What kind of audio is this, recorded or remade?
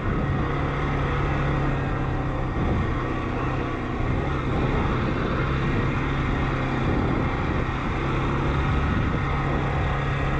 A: recorded